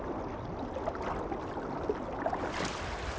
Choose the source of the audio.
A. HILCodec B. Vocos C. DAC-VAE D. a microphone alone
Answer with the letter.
D